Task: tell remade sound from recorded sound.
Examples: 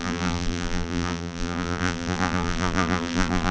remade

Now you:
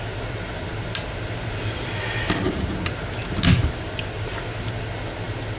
recorded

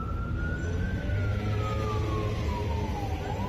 recorded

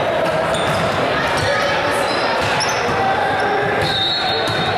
recorded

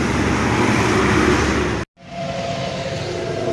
recorded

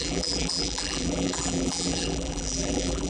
remade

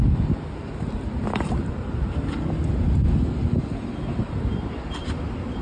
recorded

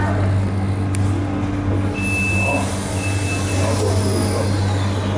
recorded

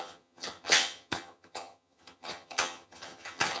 remade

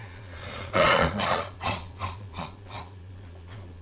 remade